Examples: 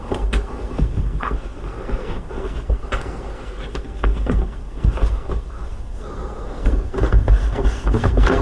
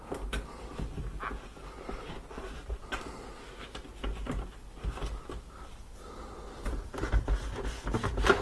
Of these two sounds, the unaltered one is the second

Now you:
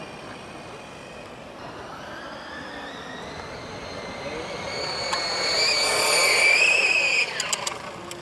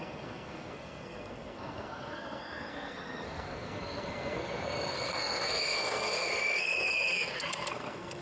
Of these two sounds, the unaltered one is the first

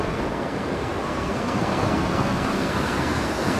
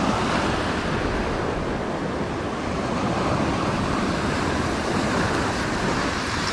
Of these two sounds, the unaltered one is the second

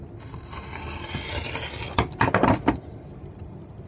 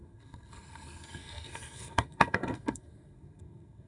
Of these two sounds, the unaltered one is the first